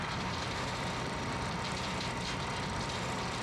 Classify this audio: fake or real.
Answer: fake